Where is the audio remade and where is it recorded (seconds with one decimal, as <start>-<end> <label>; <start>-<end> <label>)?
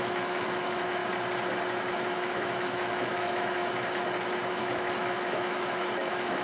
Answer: 0.0-1.0 remade; 1.0-1.9 recorded; 1.9-3.6 remade; 3.6-4.5 recorded; 4.5-6.4 remade